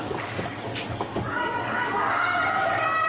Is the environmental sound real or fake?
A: fake